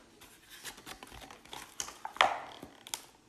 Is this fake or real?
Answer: real